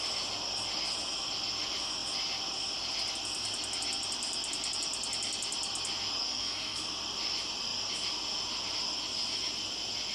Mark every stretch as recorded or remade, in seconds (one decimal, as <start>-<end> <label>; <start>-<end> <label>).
0.0-6.2 recorded; 6.2-6.8 remade; 6.8-10.1 recorded